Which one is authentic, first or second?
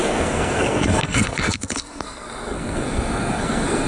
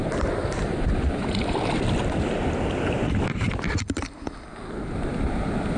second